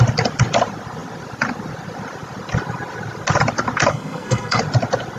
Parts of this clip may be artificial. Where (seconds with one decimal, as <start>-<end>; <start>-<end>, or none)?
3.9-4.6